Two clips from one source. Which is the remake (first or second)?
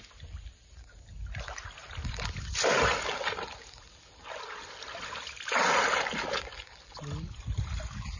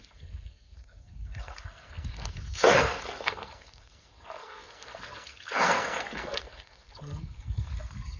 second